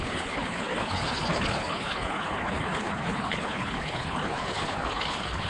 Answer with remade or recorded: remade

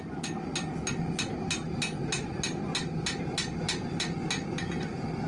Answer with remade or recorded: recorded